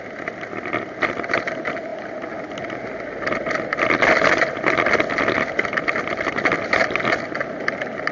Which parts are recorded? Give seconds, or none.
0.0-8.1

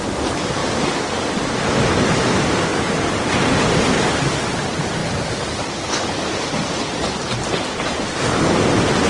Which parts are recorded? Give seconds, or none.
0.0-0.6; 1.7-2.7; 3.5-5.0; 8.2-9.1